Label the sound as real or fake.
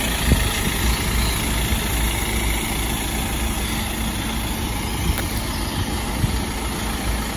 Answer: real